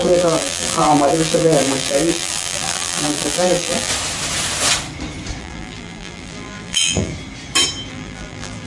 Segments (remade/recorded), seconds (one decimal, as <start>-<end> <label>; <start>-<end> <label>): 0.0-3.9 remade; 3.9-5.4 recorded; 5.4-7.1 remade; 7.1-7.9 recorded; 7.9-8.7 remade